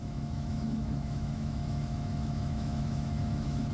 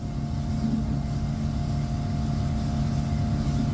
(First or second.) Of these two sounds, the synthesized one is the first